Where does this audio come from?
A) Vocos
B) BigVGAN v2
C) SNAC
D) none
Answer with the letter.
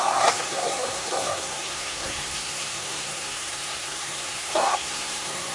C